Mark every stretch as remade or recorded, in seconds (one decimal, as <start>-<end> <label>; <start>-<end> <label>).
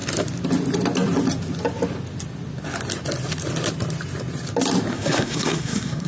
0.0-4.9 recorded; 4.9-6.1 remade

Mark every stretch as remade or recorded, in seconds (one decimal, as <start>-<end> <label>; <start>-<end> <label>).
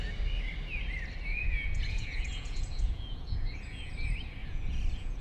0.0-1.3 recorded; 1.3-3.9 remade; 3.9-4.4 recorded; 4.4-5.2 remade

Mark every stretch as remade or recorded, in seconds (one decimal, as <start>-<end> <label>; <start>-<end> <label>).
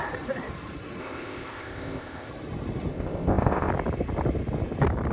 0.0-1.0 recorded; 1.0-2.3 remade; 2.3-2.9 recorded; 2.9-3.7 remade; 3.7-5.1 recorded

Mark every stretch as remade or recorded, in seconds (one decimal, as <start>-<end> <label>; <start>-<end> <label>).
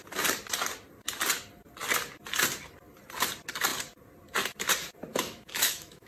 0.0-5.1 recorded; 5.1-6.1 remade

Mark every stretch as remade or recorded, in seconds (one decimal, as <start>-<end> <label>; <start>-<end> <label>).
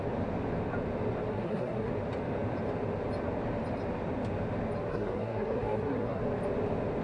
0.0-1.3 recorded; 1.3-1.9 remade; 1.9-4.9 recorded; 4.9-6.2 remade; 6.2-7.0 recorded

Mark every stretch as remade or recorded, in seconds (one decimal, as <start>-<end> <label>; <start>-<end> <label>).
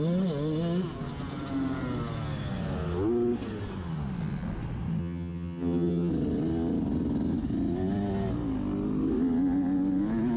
0.0-5.0 recorded; 5.0-6.1 remade; 6.1-10.4 recorded